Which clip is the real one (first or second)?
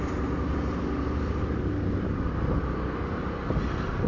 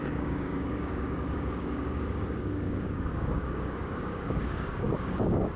first